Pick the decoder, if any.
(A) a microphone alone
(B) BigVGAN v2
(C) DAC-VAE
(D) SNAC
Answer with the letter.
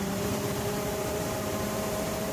B